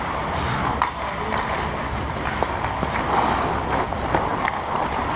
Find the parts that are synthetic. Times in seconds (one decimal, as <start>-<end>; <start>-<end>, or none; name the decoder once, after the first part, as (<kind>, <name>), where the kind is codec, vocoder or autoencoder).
none